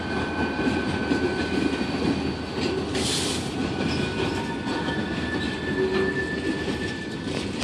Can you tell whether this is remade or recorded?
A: recorded